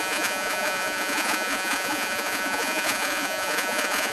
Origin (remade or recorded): remade